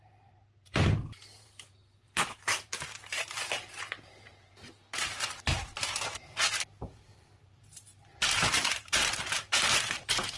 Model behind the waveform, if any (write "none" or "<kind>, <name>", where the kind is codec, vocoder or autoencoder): vocoder, BigVGAN v2